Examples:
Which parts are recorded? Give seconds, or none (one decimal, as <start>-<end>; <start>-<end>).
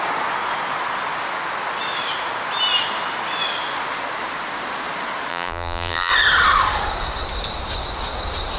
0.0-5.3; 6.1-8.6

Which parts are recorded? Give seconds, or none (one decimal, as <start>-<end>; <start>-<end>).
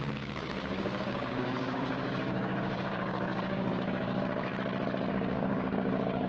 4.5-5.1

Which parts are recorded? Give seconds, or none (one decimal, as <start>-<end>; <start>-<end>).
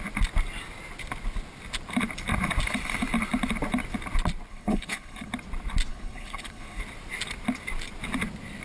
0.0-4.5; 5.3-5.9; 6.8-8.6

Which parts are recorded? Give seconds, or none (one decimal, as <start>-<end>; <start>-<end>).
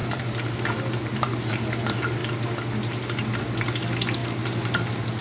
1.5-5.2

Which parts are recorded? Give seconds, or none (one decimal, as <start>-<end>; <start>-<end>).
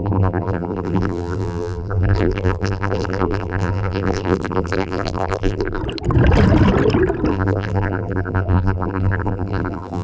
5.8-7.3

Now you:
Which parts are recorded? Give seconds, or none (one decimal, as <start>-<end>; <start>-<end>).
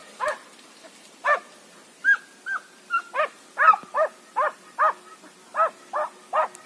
2.2-6.7